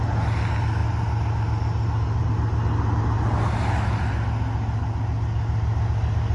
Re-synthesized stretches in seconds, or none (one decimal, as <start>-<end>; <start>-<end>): none